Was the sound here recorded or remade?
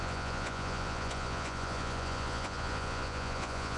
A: remade